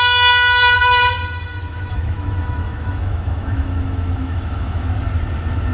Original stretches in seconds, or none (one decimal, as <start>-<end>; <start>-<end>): 0.0-1.6; 5.0-5.7